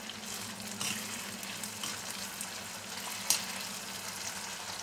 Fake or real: real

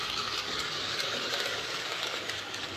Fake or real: fake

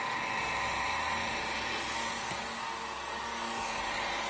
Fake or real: real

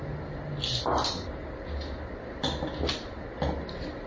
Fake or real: real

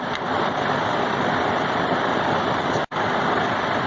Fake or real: real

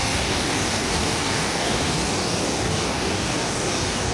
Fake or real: fake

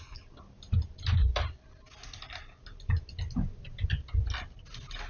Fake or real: real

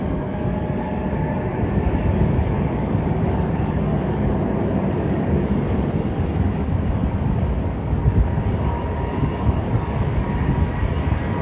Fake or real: fake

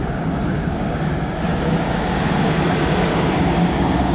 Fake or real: fake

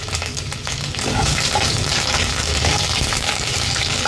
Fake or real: fake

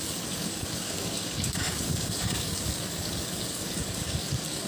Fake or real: fake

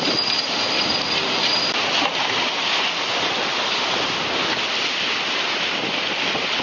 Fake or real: real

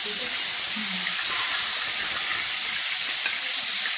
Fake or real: real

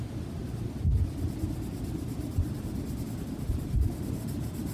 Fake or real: real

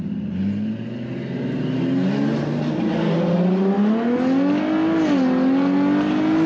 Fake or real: real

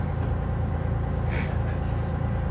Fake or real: real